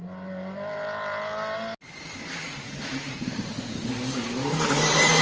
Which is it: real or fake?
real